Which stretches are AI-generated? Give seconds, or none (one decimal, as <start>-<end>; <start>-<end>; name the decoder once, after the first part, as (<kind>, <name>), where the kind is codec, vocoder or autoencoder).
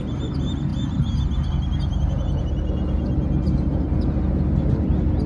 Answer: none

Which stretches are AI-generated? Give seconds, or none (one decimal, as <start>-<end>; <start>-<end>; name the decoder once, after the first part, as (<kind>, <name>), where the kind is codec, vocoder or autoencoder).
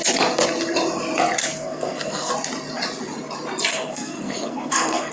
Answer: 1.4-2.3 (codec, SNAC); 3.7-5.1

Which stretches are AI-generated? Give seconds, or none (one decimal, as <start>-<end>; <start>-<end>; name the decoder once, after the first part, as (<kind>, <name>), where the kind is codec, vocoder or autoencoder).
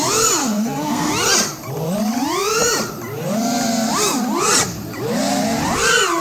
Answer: 0.4-1.1 (codec, SNAC)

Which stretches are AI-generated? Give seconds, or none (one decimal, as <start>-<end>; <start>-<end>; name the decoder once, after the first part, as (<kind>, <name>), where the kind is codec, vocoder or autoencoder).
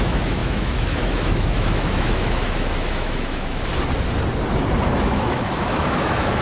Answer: 0.0-3.7 (autoencoder, DAC-VAE); 5.0-6.4